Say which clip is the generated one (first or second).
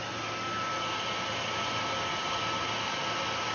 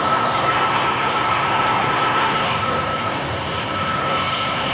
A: second